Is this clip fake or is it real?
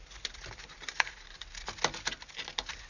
real